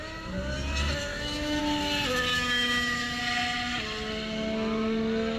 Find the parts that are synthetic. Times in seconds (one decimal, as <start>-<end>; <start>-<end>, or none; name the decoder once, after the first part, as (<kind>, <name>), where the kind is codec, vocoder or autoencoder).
1.1-1.6 (autoencoder, DAC-VAE); 2.3-3.2